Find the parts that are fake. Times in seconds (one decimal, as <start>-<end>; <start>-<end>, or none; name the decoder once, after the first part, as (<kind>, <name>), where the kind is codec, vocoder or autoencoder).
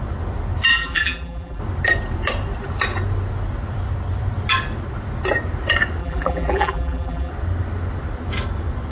0.7-1.6 (vocoder, BigVGAN v2); 6.0-7.3